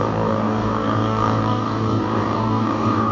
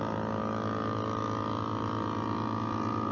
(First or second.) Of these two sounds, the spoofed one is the first